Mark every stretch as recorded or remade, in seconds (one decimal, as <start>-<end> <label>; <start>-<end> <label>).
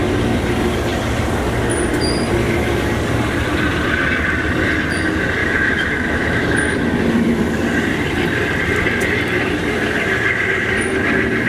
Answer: 0.0-5.4 recorded; 5.4-6.4 remade; 6.4-11.5 recorded